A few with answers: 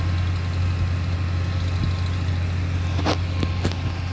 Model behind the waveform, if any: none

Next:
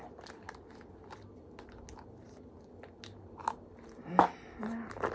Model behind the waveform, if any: none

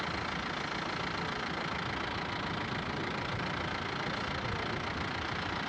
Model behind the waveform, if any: none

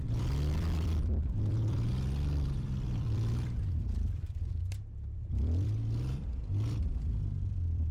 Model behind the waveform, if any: vocoder, BigVGAN v2